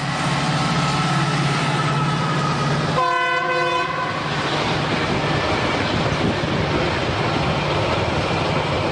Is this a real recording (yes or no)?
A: yes